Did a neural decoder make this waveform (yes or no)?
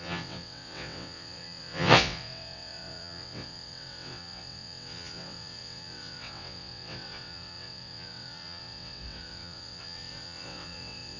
yes